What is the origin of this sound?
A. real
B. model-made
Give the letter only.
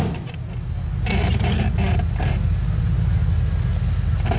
A